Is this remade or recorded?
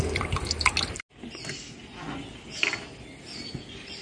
recorded